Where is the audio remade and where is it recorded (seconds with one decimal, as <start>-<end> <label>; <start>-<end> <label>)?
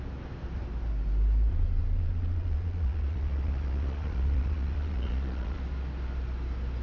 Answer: 0.0-1.5 recorded; 1.5-5.6 remade; 5.6-6.8 recorded